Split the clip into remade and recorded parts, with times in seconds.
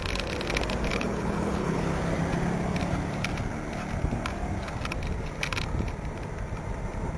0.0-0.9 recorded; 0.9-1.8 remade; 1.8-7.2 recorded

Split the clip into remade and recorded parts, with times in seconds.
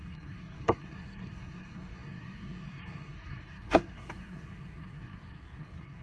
0.0-6.0 remade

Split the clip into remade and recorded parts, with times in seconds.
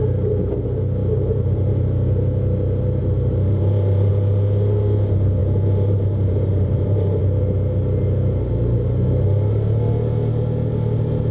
0.0-1.0 recorded; 1.0-1.8 remade; 1.8-3.0 recorded; 3.0-4.1 remade; 4.1-5.4 recorded; 5.4-7.2 remade; 7.2-11.3 recorded